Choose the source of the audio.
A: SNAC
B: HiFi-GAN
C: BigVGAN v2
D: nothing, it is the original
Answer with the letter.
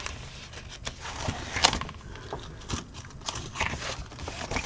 D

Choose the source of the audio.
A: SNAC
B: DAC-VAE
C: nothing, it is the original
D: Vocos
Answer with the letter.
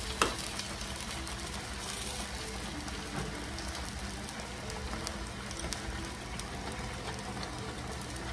C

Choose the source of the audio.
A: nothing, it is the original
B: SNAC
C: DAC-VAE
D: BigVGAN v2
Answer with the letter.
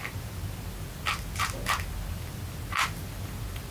A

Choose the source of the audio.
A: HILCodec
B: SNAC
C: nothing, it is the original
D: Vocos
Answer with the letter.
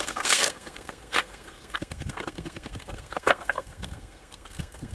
B